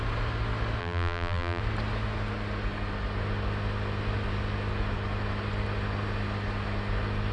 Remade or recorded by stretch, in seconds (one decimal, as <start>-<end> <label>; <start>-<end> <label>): 0.0-0.8 recorded; 0.8-1.6 remade; 1.6-7.3 recorded